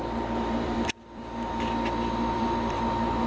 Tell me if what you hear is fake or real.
fake